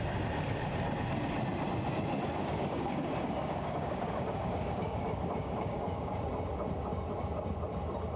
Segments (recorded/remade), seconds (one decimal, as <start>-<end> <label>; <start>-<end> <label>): 0.0-2.3 recorded; 2.3-6.2 remade; 6.2-8.2 recorded